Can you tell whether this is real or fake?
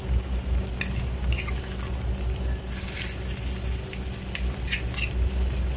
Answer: real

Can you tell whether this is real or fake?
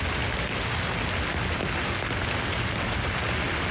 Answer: real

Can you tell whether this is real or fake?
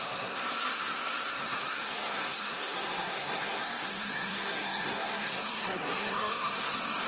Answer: fake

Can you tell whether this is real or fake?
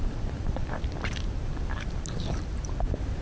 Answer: fake